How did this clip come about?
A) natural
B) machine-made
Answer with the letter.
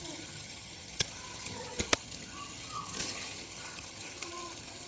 B